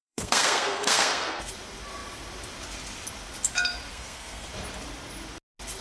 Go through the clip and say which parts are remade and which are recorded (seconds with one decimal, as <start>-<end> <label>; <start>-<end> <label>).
0.0-1.5 remade; 1.5-3.9 recorded; 3.9-4.5 remade; 4.5-5.8 recorded